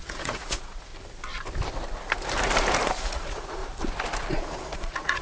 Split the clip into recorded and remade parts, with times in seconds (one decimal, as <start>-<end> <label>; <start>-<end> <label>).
0.0-0.9 remade; 0.9-2.9 recorded; 2.9-3.6 remade; 3.6-4.3 recorded; 4.3-5.2 remade